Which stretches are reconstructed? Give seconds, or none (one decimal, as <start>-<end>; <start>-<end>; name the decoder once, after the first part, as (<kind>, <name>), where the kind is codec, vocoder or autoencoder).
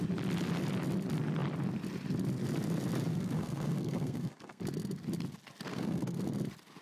3.1-4.6 (codec, SNAC); 5.7-6.2